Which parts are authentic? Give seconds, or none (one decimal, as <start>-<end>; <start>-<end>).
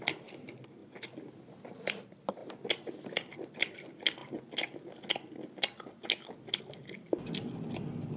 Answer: 0.0-8.2